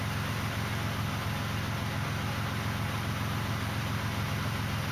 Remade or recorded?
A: recorded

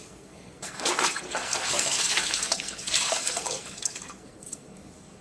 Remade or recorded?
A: remade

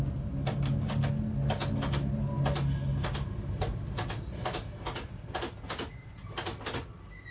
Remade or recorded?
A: recorded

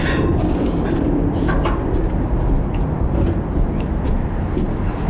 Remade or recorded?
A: recorded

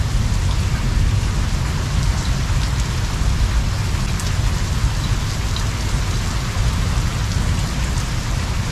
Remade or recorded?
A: recorded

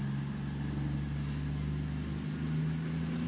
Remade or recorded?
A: recorded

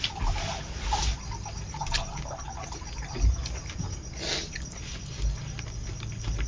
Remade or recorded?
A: recorded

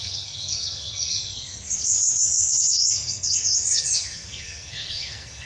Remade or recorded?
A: remade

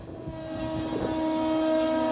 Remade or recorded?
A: recorded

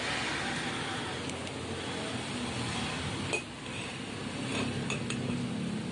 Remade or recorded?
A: recorded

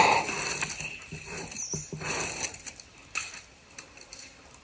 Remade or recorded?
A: recorded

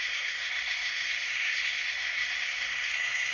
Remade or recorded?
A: remade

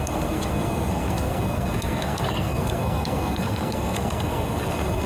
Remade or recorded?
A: remade